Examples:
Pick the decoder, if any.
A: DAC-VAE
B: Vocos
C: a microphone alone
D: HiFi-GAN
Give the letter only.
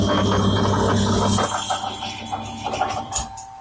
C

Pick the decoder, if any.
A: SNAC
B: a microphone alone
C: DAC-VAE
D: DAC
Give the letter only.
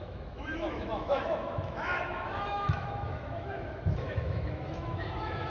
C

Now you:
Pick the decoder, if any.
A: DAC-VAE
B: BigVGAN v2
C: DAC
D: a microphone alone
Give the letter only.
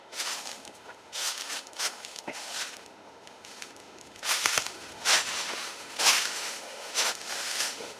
A